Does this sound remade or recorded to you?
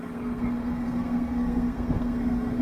remade